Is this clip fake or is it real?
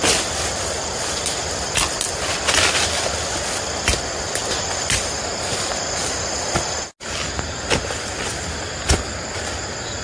real